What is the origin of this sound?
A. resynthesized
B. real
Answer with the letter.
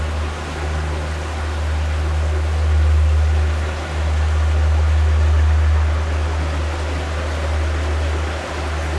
B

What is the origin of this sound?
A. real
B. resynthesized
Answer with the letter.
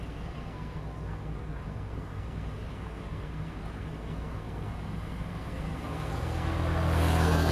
B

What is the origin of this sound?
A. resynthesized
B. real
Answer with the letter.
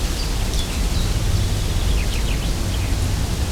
B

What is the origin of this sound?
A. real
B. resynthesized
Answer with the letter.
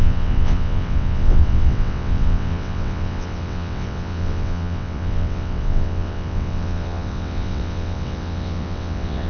B